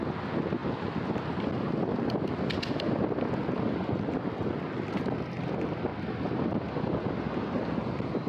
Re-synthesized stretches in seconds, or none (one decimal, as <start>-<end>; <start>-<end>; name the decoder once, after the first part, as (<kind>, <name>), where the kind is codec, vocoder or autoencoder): none